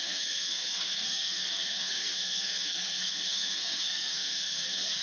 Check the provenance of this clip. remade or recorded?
remade